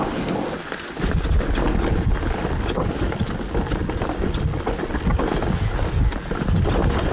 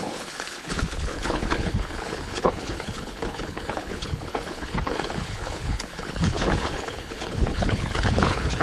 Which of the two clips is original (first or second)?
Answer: first